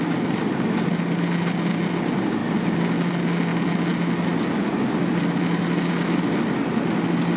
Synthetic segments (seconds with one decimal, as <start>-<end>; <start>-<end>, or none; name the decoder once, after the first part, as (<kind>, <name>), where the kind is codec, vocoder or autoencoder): none